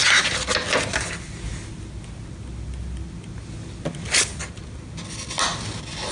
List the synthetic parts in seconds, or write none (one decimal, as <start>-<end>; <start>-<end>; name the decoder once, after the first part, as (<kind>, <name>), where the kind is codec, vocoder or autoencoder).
none